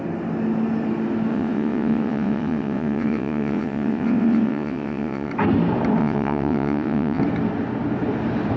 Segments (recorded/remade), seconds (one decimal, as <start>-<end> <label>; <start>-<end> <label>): 0.0-1.3 recorded; 1.3-5.3 remade; 5.3-6.0 recorded; 6.0-7.2 remade; 7.2-8.6 recorded